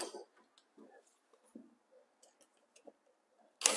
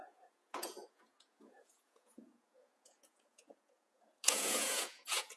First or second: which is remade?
second